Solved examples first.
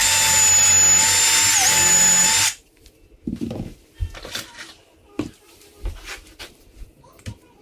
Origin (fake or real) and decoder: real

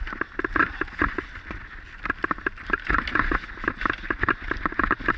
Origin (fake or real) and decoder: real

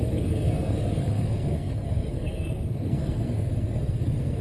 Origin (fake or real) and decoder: fake, codec, SNAC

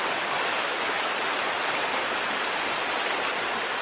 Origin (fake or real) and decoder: real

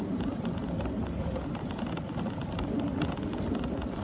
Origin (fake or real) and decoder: real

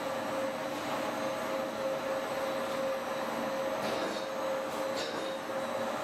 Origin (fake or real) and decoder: real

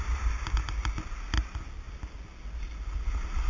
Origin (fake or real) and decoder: real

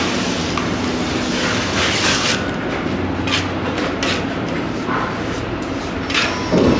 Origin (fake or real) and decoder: real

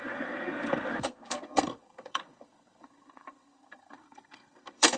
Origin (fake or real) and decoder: fake, codec, SNAC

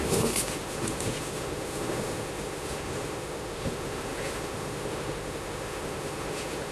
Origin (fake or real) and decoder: fake, autoencoder, DAC-VAE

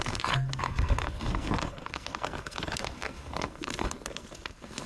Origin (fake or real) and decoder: fake, codec, SNAC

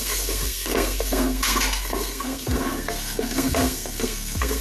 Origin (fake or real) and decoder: fake, codec, SNAC